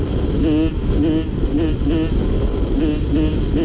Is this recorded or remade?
recorded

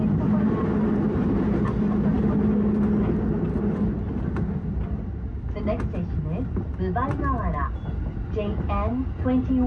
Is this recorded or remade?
recorded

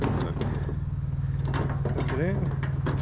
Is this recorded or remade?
recorded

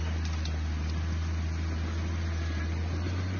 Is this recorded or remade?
recorded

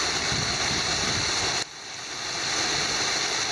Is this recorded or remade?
recorded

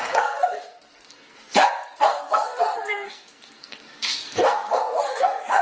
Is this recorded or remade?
remade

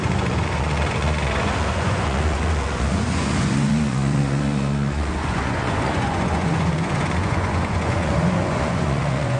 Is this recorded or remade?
remade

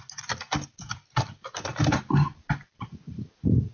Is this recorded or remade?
recorded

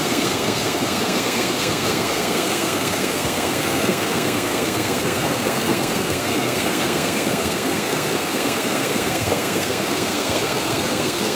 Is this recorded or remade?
remade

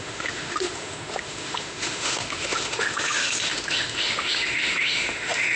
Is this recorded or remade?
remade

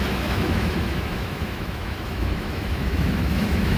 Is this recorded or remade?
remade